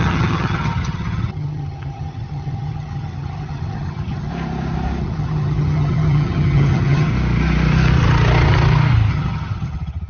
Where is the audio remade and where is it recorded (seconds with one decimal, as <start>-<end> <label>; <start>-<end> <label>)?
0.0-4.3 remade; 4.3-5.0 recorded; 5.0-7.1 remade; 7.1-9.1 recorded; 9.1-10.1 remade